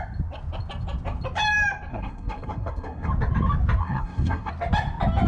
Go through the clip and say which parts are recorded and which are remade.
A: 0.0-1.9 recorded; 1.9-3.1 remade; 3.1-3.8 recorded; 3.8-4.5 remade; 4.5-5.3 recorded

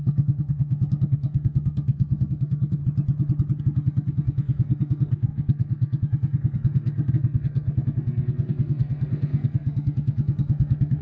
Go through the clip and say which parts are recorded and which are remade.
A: 0.0-2.8 remade; 2.8-3.6 recorded; 3.6-11.0 remade

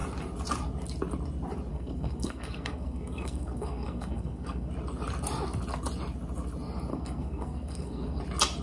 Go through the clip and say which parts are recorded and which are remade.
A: 0.0-1.7 recorded; 1.7-4.7 remade; 4.7-6.9 recorded; 6.9-8.2 remade; 8.2-8.6 recorded